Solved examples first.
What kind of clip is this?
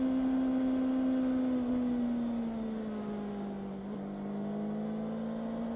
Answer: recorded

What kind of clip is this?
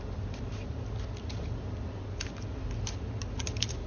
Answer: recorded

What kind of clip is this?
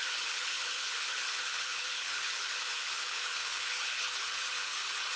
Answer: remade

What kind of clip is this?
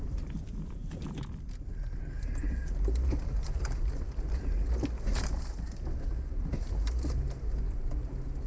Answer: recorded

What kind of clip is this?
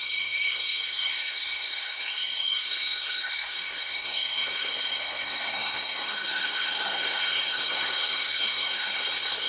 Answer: remade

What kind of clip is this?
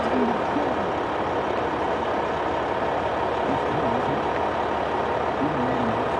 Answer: recorded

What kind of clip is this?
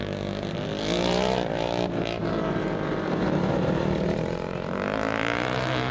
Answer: remade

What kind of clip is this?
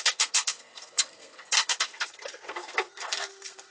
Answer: remade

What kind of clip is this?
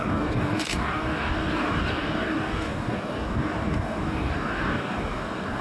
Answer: remade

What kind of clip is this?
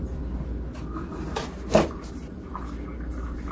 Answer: recorded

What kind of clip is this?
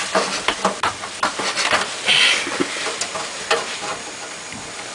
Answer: recorded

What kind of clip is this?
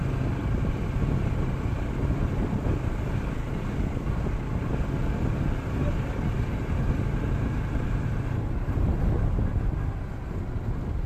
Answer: recorded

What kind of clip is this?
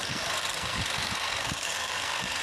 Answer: remade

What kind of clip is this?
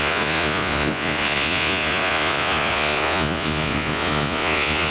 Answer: remade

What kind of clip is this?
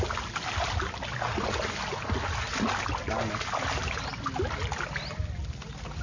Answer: recorded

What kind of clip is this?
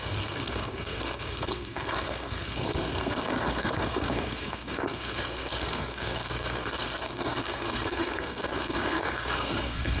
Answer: remade